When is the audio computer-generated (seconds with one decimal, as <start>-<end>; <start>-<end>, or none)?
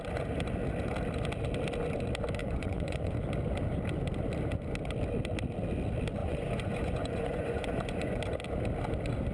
2.4-3.1; 6.2-8.2